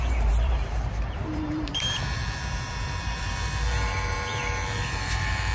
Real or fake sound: fake